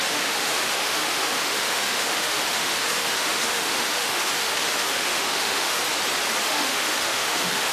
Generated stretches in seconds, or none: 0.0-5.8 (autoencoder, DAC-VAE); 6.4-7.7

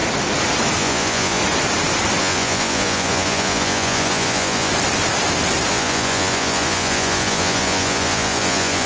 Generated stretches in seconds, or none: 0.8-1.4 (vocoder, Vocos); 2.2-4.7; 5.7-8.9

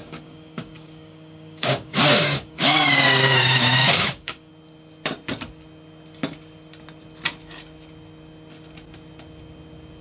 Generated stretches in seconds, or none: 0.0-4.5 (codec, DAC)

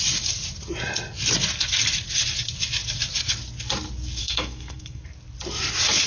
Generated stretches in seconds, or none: 4.2-5.0 (codec, SNAC)

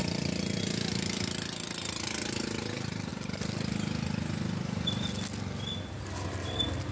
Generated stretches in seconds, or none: 0.0-0.6 (vocoder, BigVGAN v2)

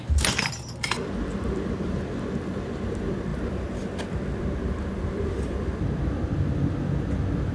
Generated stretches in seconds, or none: none

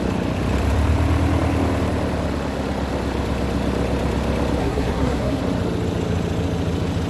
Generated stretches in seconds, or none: 4.6-5.4 (codec, SNAC)

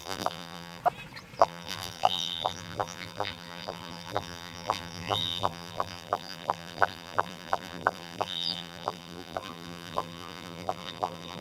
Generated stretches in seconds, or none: 0.0-0.8 (vocoder, BigVGAN v2); 1.4-11.4